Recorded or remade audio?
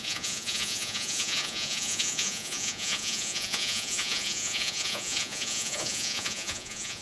remade